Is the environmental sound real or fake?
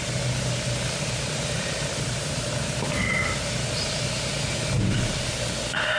real